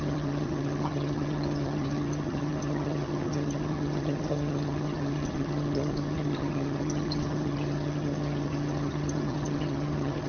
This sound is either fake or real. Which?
fake